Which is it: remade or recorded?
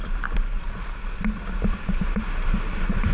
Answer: recorded